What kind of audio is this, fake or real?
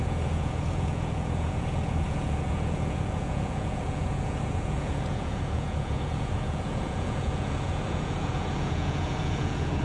fake